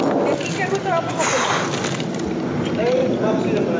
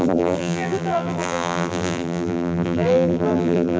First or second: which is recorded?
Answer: first